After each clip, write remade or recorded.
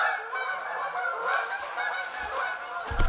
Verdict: recorded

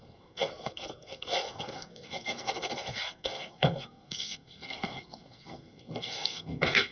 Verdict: remade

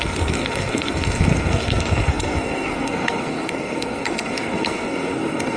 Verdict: remade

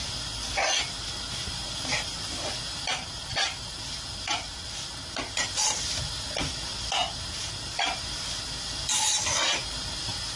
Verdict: recorded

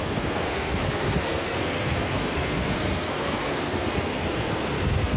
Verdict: remade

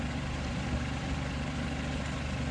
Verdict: recorded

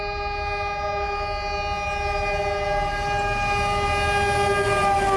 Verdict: recorded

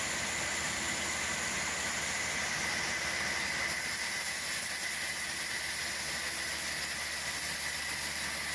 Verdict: recorded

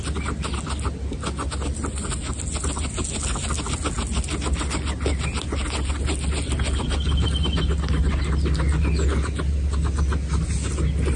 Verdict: recorded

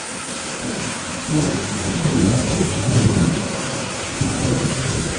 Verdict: remade